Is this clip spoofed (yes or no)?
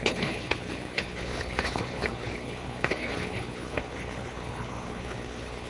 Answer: yes